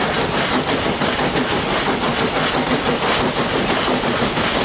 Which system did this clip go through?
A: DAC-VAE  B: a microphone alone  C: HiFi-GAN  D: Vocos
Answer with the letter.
B